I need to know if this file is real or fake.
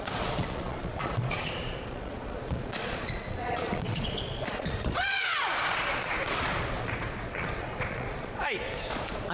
fake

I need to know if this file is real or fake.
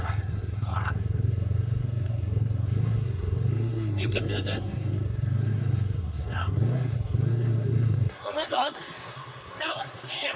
fake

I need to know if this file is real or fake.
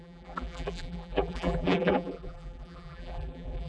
fake